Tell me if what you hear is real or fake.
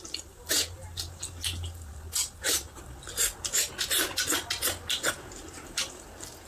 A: real